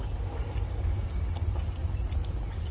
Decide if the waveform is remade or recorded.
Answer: recorded